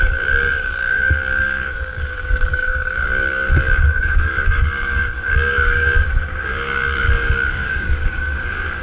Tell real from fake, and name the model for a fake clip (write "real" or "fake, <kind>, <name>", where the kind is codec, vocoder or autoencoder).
fake, codec, DAC